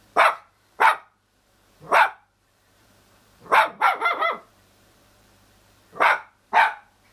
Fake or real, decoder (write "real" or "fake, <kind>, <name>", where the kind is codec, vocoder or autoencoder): fake, vocoder, BigVGAN v2